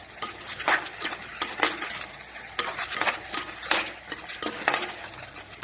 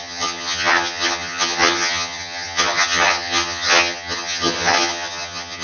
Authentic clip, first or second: first